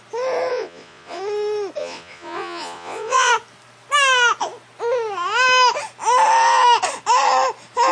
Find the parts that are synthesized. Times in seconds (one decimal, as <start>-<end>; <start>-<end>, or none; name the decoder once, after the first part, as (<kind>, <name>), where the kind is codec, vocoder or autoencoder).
0.5-1.2 (vocoder, Vocos); 1.8-3.3